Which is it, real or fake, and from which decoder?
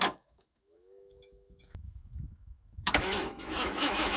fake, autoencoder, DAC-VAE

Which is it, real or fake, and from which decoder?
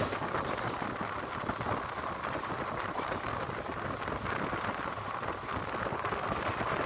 real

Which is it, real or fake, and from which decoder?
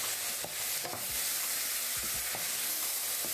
real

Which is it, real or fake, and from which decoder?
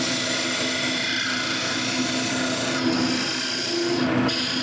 real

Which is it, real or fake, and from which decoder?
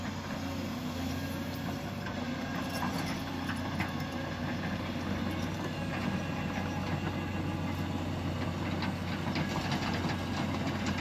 real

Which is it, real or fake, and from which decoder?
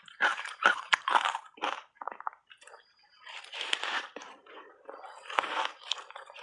fake, vocoder, BigVGAN v2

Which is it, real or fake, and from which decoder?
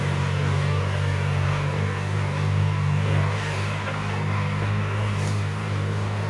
fake, codec, DAC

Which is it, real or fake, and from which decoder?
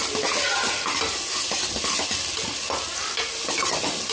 real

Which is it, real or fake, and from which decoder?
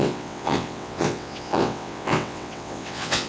fake, vocoder, WaveNeXt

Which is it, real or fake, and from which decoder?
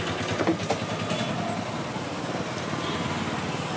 real